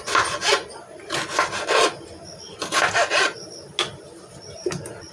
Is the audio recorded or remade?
recorded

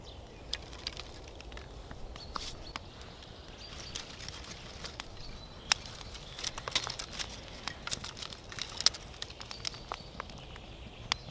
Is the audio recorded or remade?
recorded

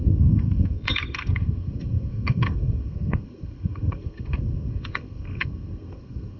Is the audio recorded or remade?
remade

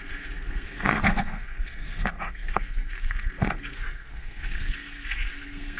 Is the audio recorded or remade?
remade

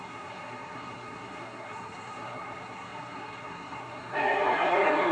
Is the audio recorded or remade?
remade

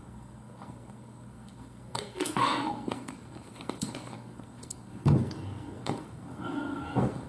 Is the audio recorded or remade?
remade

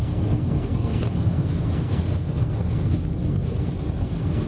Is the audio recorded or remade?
remade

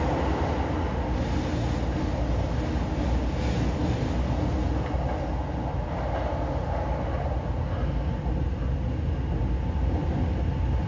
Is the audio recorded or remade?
recorded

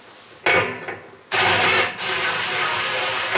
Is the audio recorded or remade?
recorded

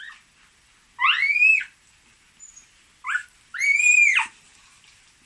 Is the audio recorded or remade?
recorded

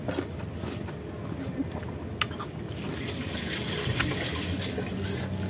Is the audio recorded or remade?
recorded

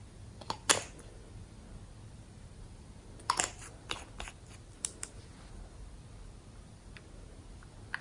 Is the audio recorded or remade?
recorded